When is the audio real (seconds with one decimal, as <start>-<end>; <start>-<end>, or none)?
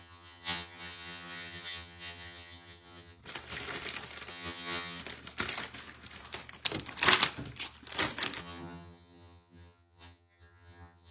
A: 3.2-4.3; 5.0-8.4